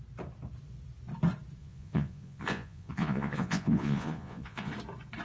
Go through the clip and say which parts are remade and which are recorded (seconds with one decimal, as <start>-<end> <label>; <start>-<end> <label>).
0.0-1.6 recorded; 1.6-4.7 remade; 4.7-5.2 recorded